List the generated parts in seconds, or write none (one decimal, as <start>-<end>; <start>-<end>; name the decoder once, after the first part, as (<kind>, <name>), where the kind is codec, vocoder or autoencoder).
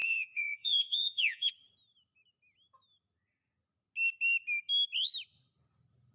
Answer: 0.0-1.5 (vocoder, Vocos)